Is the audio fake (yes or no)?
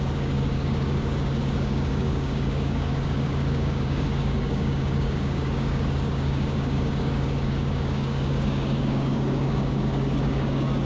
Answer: yes